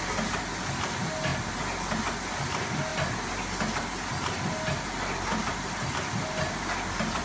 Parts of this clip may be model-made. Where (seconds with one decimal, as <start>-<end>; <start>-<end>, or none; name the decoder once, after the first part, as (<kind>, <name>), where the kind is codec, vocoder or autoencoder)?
none